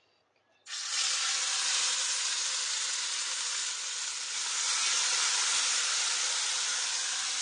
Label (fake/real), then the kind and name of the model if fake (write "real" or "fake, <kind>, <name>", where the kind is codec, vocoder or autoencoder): real